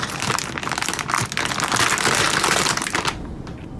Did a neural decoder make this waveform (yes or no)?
no